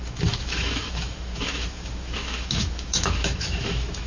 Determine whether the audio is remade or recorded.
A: remade